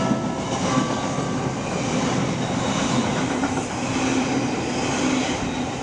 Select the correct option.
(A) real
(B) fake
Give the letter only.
A